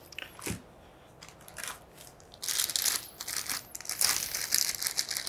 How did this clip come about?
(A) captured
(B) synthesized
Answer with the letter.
A